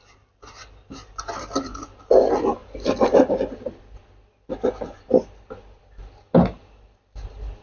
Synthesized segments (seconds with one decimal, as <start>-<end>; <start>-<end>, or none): none